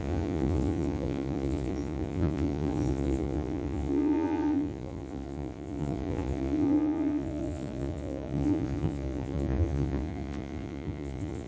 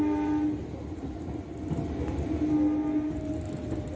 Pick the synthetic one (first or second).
first